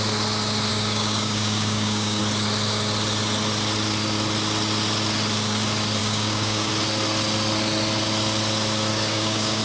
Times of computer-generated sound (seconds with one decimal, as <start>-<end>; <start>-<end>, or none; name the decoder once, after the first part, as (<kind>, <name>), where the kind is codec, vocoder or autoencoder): 0.7-2.2 (codec, DAC); 6.0-6.7; 8.9-9.6